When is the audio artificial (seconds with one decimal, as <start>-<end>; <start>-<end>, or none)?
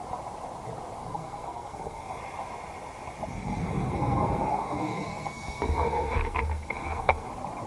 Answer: 1.0-2.2; 3.3-7.3